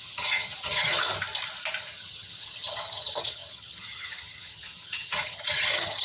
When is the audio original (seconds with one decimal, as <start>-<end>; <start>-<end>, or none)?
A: 1.0-1.8